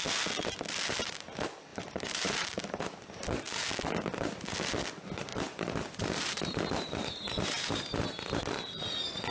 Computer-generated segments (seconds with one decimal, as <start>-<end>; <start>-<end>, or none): 1.7-2.8; 5.3-8.4